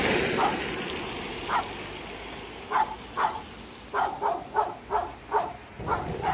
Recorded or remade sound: recorded